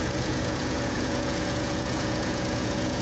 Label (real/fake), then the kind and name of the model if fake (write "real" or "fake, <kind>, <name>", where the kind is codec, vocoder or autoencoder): fake, vocoder, Vocos